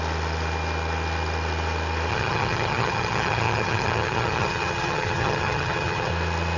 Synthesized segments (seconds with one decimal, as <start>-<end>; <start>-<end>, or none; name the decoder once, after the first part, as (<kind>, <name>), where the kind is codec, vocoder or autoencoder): 2.1-6.1 (vocoder, HiFi-GAN)